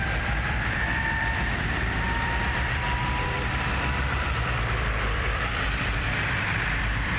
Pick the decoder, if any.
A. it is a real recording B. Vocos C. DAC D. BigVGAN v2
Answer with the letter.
D